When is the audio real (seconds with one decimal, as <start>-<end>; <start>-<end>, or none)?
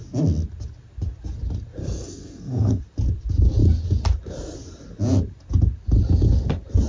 0.0-1.8; 2.8-6.9